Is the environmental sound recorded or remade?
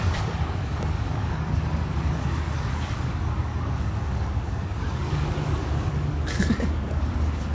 remade